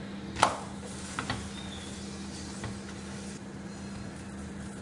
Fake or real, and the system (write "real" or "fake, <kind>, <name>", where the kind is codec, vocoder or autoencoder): real